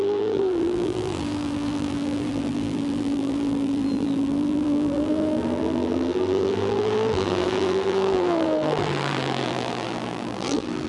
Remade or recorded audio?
remade